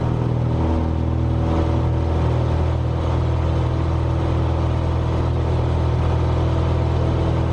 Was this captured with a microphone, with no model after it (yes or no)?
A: yes